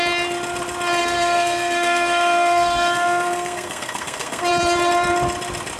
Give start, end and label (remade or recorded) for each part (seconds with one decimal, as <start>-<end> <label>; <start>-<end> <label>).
0.0-1.0 recorded; 1.0-4.5 remade; 4.5-5.8 recorded

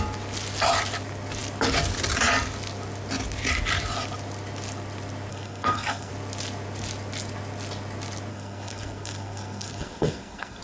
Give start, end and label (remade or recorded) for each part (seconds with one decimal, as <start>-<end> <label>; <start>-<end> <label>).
0.0-5.3 recorded; 5.3-6.1 remade; 6.1-8.3 recorded; 8.3-10.6 remade

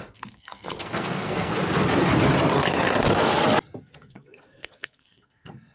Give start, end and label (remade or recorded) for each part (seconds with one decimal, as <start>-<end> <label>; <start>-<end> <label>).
0.0-1.5 remade; 1.5-3.8 recorded; 3.8-5.7 remade

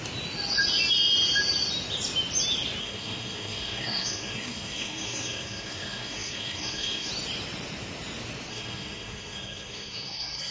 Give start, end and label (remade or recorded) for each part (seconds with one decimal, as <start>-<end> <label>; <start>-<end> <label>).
0.0-2.8 recorded; 2.8-7.1 remade; 7.1-8.5 recorded; 8.5-10.5 remade

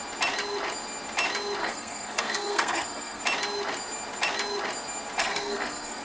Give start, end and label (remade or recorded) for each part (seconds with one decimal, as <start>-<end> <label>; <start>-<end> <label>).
0.0-1.6 recorded; 1.6-3.2 remade; 3.2-5.2 recorded; 5.2-6.0 remade